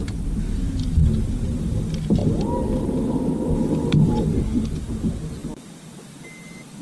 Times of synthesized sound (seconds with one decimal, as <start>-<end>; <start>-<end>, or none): none